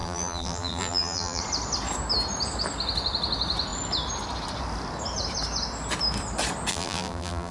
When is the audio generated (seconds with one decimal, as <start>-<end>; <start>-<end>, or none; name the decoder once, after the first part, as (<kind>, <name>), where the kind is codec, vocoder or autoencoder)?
0.0-1.4 (vocoder, BigVGAN v2); 6.7-7.5